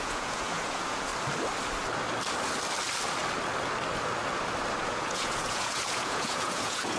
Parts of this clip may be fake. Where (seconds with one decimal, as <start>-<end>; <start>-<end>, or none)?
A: 0.0-1.1; 4.8-7.0